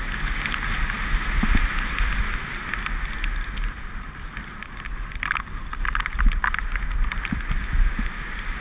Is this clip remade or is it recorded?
recorded